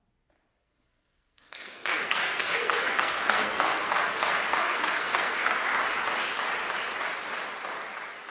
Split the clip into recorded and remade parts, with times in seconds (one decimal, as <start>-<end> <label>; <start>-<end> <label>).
0.0-0.6 recorded; 0.6-5.6 remade; 5.6-8.3 recorded

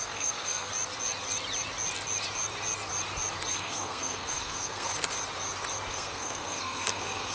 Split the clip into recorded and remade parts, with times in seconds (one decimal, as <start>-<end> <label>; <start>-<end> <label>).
0.0-0.7 remade; 0.7-3.5 recorded; 3.5-4.9 remade; 4.9-5.9 recorded; 5.9-7.3 remade

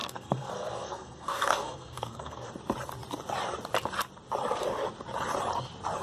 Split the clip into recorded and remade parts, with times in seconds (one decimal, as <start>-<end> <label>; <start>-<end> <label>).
0.0-2.5 remade; 2.5-6.0 recorded